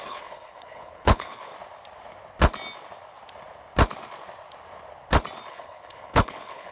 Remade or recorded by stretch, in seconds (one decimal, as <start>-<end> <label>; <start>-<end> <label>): 0.0-1.5 remade; 1.5-5.5 recorded; 5.5-6.7 remade